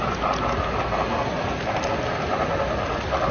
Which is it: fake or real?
real